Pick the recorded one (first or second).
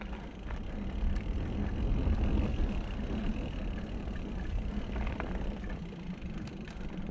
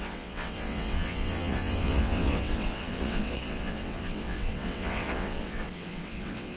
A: first